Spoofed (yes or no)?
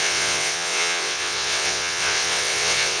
yes